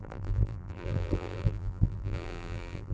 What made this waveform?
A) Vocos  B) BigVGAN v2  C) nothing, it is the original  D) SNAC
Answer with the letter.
B